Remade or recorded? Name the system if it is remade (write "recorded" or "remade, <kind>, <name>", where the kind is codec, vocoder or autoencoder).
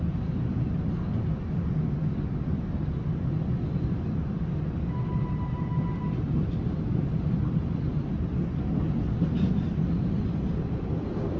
recorded